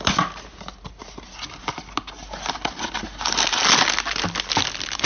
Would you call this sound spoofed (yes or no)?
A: no